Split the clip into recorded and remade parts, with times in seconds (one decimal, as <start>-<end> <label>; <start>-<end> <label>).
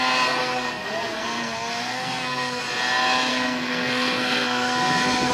0.0-0.4 recorded; 0.4-2.6 remade; 2.6-3.3 recorded; 3.3-5.3 remade